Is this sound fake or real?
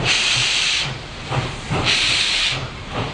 fake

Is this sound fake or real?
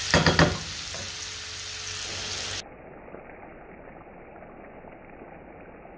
real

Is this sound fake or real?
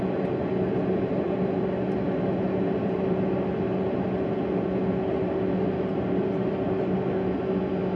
real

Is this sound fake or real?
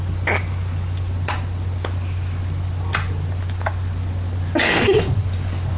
real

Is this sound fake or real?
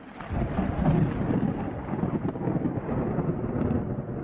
real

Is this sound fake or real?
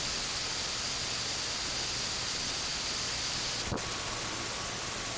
real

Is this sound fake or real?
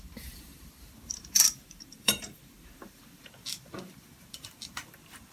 fake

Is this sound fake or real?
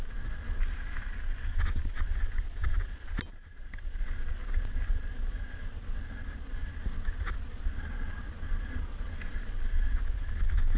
real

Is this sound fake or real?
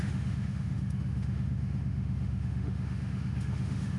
fake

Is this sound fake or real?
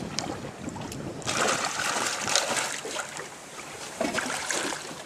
real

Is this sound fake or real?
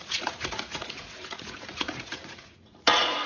fake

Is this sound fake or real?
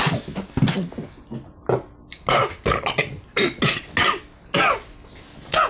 real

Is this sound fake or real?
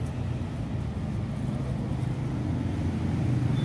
real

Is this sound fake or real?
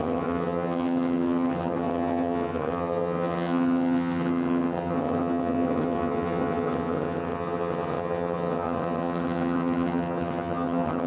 fake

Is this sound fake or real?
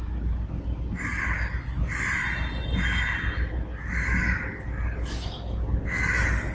real